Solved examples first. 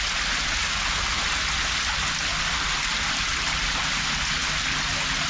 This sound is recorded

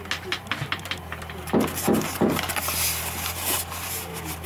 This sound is recorded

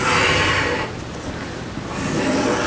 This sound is recorded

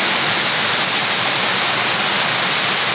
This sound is recorded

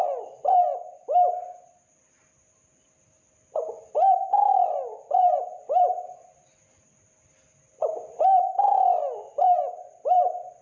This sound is recorded